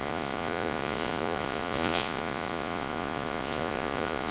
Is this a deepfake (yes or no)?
yes